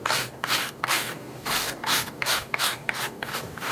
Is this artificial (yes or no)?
yes